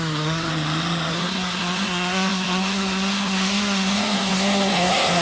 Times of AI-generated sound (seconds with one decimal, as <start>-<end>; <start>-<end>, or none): 0.0-0.5; 1.1-5.2

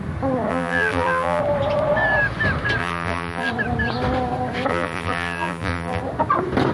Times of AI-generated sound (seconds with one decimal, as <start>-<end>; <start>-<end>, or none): 0.5-1.4; 2.8-3.5; 4.7-6.0

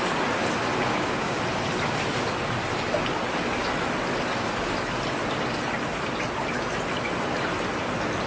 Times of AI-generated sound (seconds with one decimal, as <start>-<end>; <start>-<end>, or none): 0.9-1.4

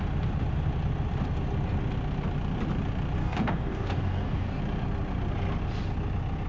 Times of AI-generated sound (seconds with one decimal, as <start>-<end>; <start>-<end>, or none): 3.2-4.6

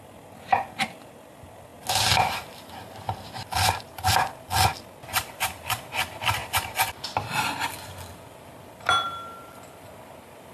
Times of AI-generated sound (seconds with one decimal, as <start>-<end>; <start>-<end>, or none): none